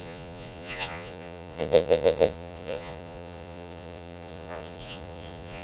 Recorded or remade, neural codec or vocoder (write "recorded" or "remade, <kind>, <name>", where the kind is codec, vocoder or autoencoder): remade, vocoder, Vocos